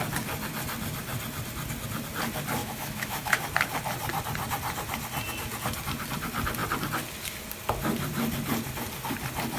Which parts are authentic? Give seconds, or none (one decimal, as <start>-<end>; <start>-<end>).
0.0-2.6; 3.4-9.6

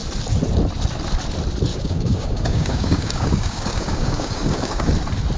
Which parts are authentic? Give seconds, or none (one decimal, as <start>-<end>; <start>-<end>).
0.0-1.7; 4.9-5.4

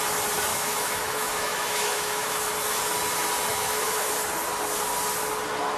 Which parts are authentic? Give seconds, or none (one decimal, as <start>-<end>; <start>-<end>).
0.0-0.5; 2.5-3.5; 4.1-5.8

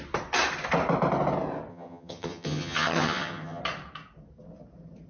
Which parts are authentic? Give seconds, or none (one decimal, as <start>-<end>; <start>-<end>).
0.0-1.7; 3.6-5.1